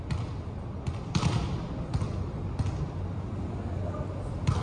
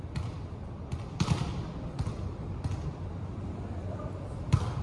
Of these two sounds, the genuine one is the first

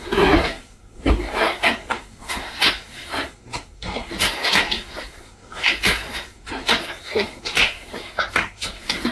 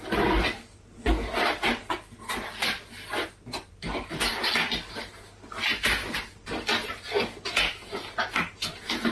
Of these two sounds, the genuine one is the second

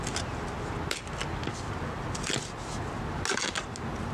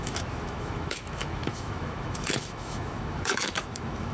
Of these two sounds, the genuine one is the first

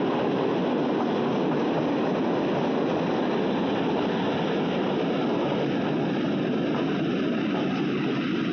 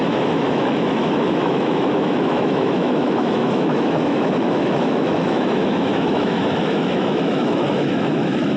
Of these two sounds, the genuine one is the first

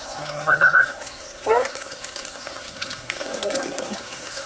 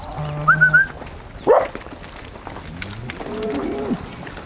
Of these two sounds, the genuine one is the second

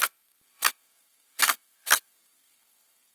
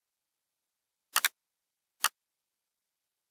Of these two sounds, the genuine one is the second